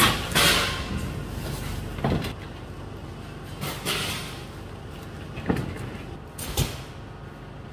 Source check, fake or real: real